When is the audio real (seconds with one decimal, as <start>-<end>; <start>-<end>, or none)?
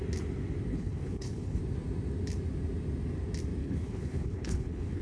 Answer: 0.0-0.7; 1.6-3.6